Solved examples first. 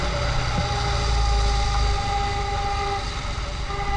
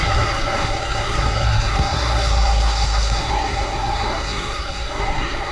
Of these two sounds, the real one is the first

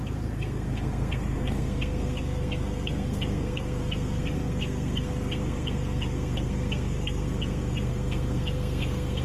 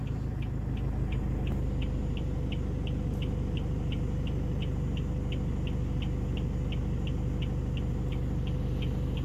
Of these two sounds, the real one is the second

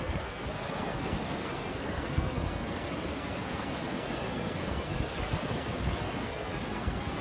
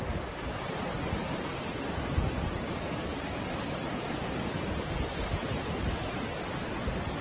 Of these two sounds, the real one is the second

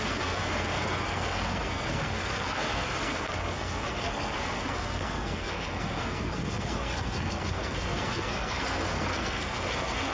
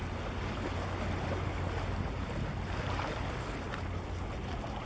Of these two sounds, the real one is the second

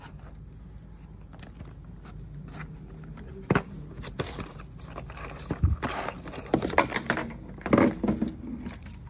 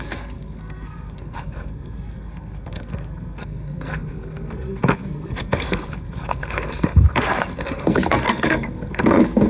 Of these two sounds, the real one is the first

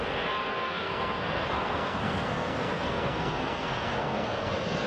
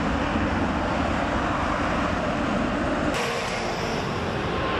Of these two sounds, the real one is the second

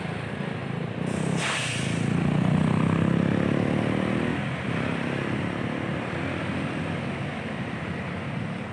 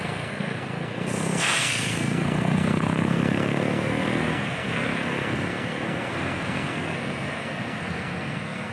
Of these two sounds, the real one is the first